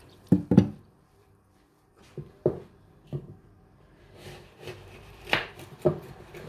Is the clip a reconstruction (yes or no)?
yes